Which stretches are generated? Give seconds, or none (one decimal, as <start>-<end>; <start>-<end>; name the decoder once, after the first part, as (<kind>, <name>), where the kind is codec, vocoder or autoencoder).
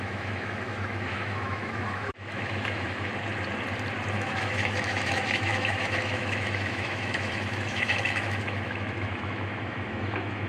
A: 0.0-3.1 (autoencoder, DAC-VAE); 4.1-10.5